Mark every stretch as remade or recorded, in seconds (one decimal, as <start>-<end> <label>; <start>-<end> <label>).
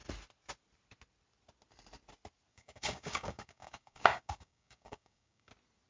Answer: 0.0-2.5 recorded; 2.5-5.5 remade; 5.5-5.9 recorded